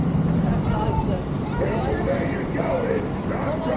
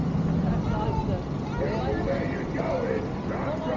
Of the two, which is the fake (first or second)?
first